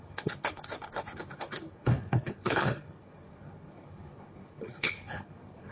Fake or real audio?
fake